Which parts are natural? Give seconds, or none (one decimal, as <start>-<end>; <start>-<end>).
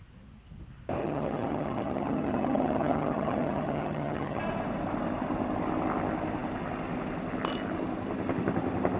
0.0-1.0; 4.4-9.0